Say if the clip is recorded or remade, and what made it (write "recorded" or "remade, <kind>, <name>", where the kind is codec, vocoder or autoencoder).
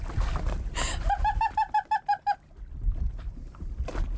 recorded